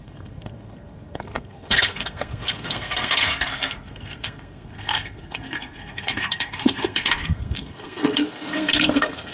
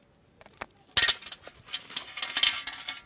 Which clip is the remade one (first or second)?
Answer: first